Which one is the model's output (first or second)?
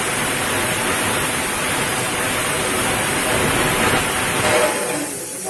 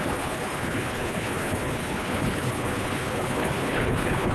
second